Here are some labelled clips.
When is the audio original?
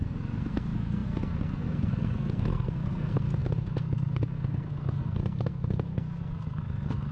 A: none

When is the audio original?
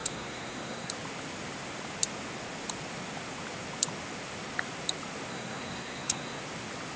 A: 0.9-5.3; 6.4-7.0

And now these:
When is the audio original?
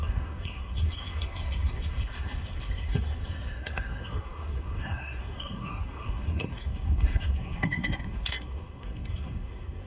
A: none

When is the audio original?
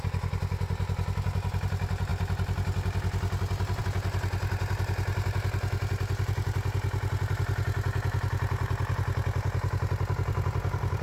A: 0.0-11.0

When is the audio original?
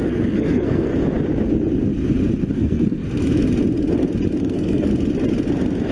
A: 0.9-2.5; 3.0-4.4; 4.9-5.9